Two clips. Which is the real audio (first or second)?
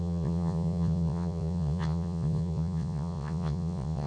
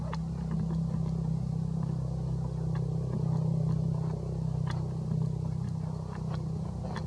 second